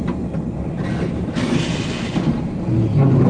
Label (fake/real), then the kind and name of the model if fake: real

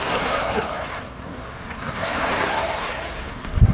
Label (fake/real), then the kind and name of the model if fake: fake, codec, SNAC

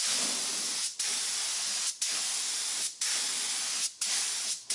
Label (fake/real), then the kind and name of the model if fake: real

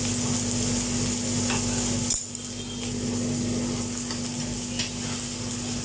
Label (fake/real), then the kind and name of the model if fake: real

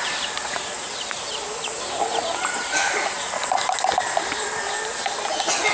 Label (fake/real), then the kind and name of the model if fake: real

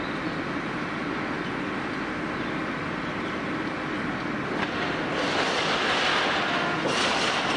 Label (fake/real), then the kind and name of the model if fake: real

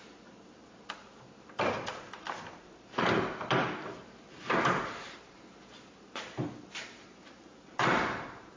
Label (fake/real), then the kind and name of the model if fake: fake, vocoder, BigVGAN v2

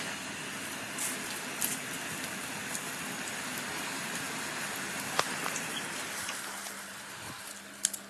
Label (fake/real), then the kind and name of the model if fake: real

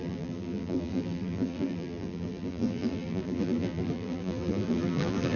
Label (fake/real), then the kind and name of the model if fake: fake, vocoder, BigVGAN v2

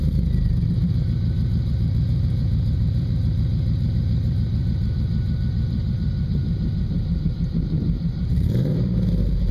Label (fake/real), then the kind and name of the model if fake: fake, vocoder, BigVGAN v2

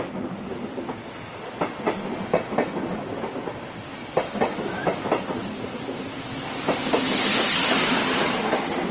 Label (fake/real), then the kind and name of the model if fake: real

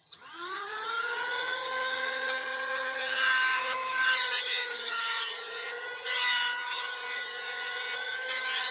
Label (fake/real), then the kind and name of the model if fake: fake, vocoder, HiFi-GAN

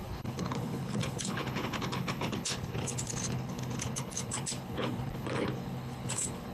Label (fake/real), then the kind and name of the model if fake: fake, codec, HILCodec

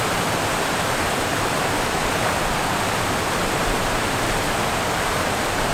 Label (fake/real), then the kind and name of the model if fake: real